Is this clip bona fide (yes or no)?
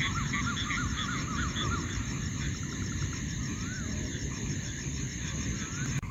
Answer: no